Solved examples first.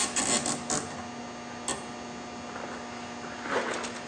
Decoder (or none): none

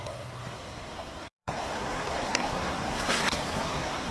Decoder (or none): codec, SNAC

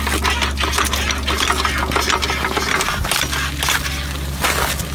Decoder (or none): none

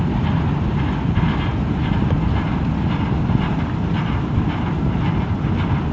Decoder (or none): none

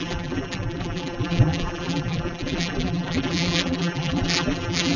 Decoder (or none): vocoder, BigVGAN v2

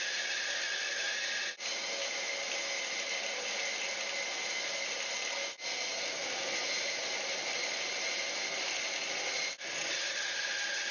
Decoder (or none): none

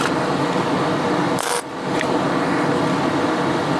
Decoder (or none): none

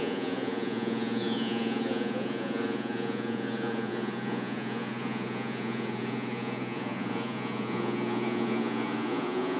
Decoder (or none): vocoder, Vocos